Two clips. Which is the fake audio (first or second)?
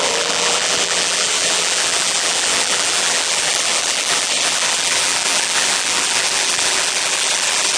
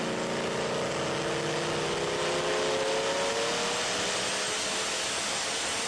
first